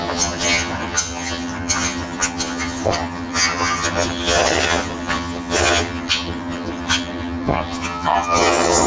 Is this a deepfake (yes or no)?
yes